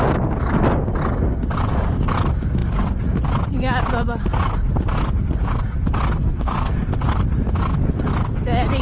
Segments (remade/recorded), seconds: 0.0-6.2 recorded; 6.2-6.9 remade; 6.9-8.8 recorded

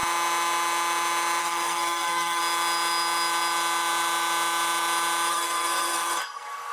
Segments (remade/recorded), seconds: 0.0-1.4 recorded; 1.4-2.4 remade; 2.4-5.3 recorded; 5.3-6.7 remade